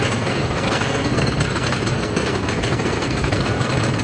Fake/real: fake